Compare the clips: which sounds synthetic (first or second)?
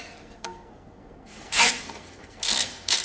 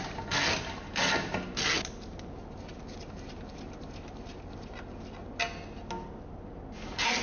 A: first